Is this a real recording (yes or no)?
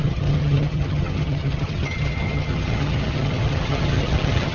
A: no